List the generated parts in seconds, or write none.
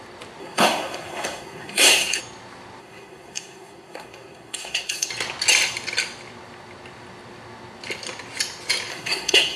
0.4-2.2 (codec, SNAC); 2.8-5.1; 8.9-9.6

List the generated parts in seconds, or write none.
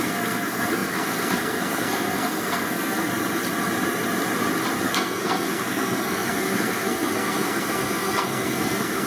0.0-3.1 (codec, SNAC); 4.8-9.1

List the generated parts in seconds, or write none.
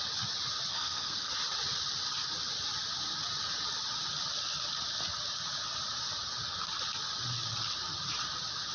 0.7-1.3 (codec, SNAC)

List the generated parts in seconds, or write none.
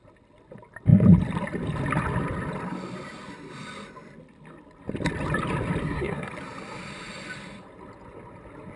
5.8-6.3 (codec, SNAC)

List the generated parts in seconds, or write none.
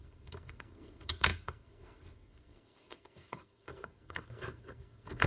0.0-5.3 (codec, SNAC)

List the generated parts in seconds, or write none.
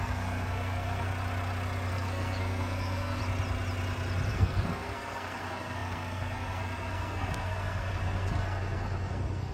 0.0-1.1 (codec, SNAC); 1.9-3.2; 4.3-9.5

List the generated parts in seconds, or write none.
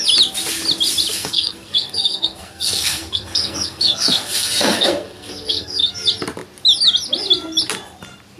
1.1-5.9 (codec, SNAC)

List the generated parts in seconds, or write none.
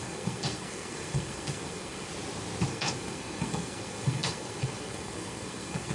0.0-2.1 (codec, SNAC); 2.7-5.9